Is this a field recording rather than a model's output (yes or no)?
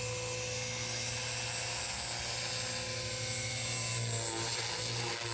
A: yes